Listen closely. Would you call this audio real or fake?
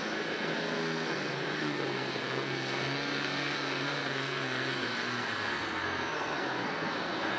fake